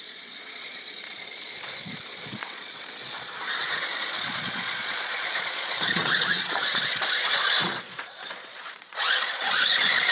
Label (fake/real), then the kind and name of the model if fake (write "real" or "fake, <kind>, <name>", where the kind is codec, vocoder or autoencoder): fake, vocoder, Vocos